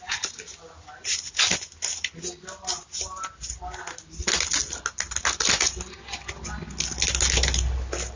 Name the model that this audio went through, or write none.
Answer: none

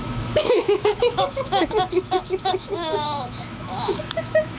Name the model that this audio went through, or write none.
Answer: autoencoder, DAC-VAE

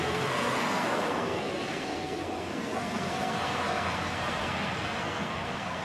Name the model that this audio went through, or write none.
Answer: codec, SNAC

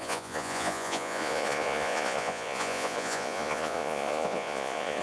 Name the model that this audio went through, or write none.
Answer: vocoder, Vocos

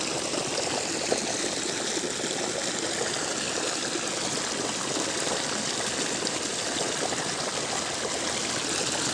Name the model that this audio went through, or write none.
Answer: none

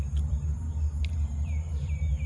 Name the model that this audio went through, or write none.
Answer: vocoder, BigVGAN v2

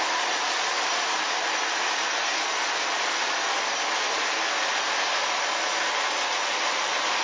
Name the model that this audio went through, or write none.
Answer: none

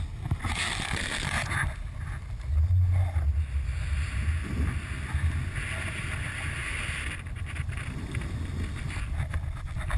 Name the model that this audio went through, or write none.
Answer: none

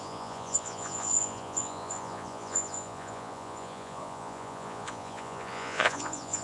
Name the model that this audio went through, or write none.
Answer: vocoder, Vocos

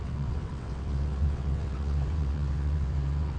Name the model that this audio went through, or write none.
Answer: vocoder, WaveNeXt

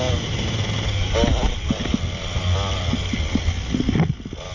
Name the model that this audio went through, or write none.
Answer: none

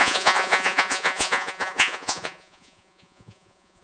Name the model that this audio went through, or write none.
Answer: vocoder, Vocos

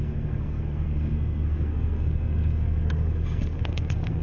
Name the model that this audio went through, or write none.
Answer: codec, SNAC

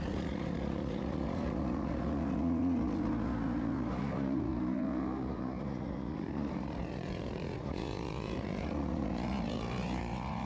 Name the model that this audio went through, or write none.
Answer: vocoder, Vocos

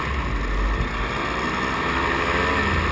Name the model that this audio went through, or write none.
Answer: none